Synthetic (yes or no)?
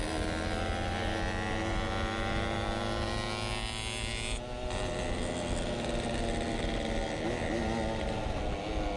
no